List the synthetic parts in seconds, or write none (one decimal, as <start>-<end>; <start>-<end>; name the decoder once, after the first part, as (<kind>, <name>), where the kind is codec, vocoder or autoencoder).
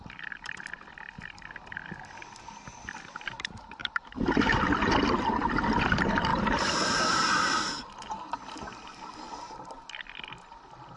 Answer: 3.8-4.7 (vocoder, BigVGAN v2); 6.3-7.0